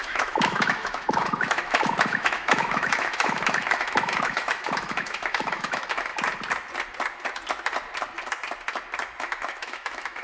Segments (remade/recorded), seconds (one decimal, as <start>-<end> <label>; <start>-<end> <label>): 0.0-6.1 remade; 6.1-9.2 recorded; 9.2-10.2 remade